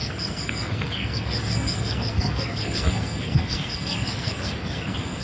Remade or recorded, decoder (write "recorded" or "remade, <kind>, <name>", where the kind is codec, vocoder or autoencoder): remade, codec, SNAC